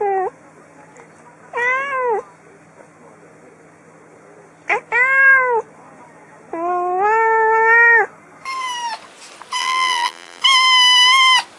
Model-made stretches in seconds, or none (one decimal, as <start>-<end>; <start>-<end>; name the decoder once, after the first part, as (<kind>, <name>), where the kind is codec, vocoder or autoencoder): 9.6-10.4 (vocoder, BigVGAN v2)